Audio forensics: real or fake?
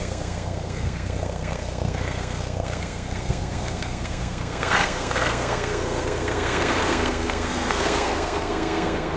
fake